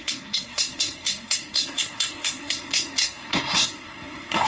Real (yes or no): no